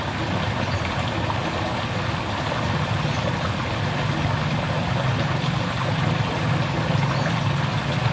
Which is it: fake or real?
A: real